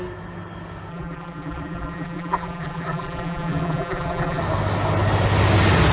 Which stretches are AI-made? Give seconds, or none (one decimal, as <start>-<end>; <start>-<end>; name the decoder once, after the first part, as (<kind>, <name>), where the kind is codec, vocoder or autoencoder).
0.9-4.4 (vocoder, BigVGAN v2)